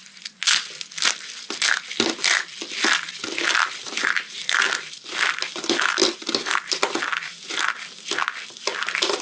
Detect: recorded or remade recorded